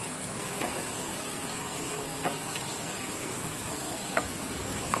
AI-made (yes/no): yes